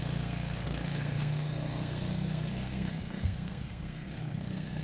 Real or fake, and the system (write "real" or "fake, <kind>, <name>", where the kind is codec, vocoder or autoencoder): fake, codec, SNAC